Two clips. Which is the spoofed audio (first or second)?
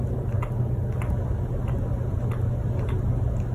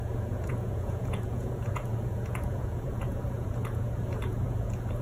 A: second